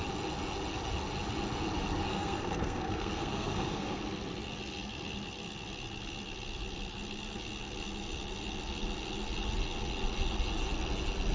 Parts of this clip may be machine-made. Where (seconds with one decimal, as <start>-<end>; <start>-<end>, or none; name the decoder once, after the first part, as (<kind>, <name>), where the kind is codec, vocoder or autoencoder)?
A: 2.1-4.0 (codec, SNAC)